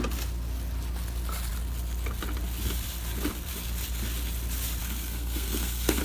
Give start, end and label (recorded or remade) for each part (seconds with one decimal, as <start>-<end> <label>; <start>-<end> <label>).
0.0-4.8 recorded; 4.8-6.0 remade